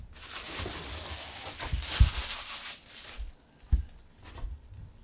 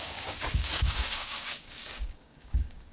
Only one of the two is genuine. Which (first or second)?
first